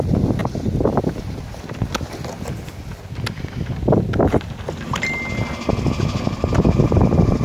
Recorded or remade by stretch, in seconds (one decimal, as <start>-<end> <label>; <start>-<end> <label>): 0.0-7.4 recorded